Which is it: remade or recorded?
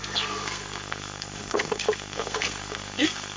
remade